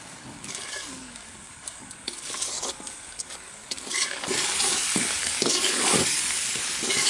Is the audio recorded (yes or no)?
no